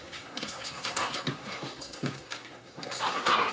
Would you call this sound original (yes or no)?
no